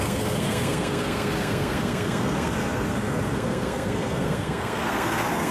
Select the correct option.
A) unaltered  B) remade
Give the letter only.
B